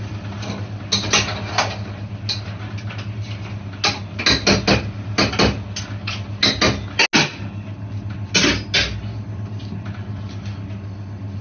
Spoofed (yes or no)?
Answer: no